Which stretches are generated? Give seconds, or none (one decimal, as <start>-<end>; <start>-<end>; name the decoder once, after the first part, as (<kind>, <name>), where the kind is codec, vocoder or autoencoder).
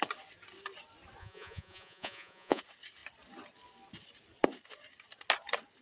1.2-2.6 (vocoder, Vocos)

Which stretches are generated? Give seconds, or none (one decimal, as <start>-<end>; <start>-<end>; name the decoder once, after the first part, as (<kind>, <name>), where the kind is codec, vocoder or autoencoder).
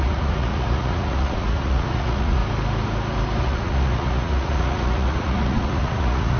0.0-2.4 (vocoder, Vocos); 3.4-6.4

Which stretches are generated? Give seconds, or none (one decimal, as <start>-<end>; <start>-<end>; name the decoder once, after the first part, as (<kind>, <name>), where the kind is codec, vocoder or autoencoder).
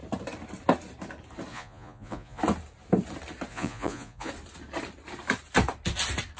1.5-2.4 (vocoder, Vocos); 3.5-4.3